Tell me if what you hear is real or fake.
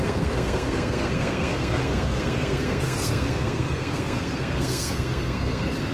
fake